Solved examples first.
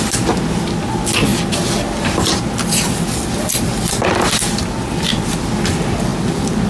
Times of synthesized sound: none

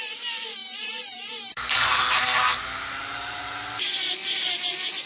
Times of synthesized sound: 0.6-3.5 (vocoder, BigVGAN v2)

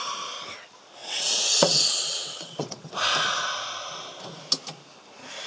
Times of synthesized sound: 1.0-2.9 (vocoder, WaveNeXt)

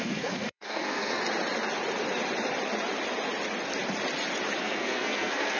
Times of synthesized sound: 0.0-1.2 (codec, SNAC); 4.6-5.6

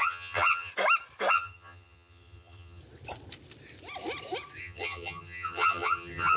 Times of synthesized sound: 0.0-0.7 (vocoder, HiFi-GAN); 1.3-2.8; 4.6-6.4

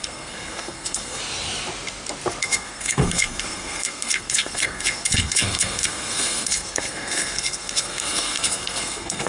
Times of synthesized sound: 0.0-1.2 (codec, SNAC); 2.4-9.3

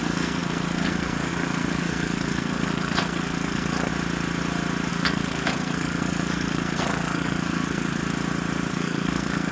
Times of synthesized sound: 0.0-3.9 (codec, SNAC); 4.9-8.0; 8.7-9.5

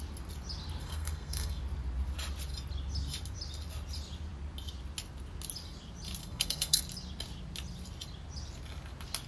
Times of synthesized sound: 0.8-1.6 (codec, SNAC); 6.2-6.8